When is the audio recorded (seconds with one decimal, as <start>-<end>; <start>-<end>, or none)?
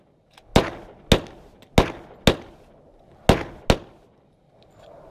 0.0-5.1